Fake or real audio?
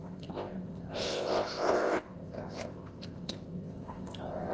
fake